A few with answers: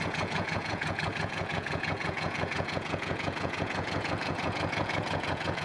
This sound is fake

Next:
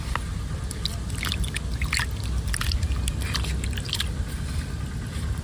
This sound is real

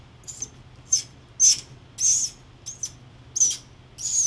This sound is real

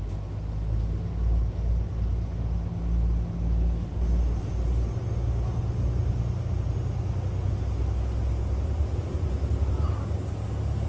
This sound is real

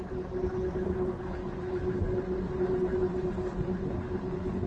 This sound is real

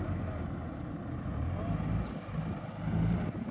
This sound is real